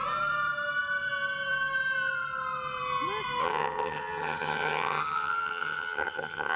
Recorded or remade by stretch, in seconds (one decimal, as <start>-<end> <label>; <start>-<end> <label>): 0.0-3.4 recorded; 3.4-6.6 remade